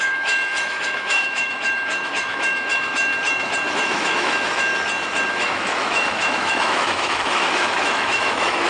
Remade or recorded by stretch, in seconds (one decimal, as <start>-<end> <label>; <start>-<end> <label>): 0.0-3.1 remade; 3.1-3.7 recorded; 3.7-4.7 remade; 4.7-5.3 recorded; 5.3-8.7 remade